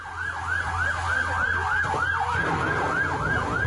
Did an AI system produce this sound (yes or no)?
no